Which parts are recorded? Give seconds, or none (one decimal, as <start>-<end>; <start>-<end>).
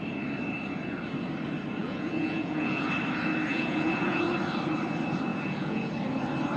0.0-1.8; 2.9-3.5; 4.2-5.3; 5.9-6.6